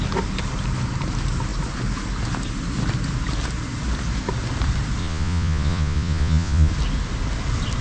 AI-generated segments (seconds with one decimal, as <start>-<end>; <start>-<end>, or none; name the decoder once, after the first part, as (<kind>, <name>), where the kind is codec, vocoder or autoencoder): 5.0-6.7 (vocoder, Vocos)

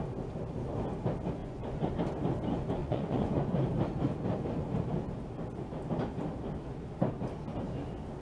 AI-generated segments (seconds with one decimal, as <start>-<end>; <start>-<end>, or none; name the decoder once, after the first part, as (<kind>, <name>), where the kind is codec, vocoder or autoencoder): 1.4-1.9 (vocoder, Vocos); 2.8-3.5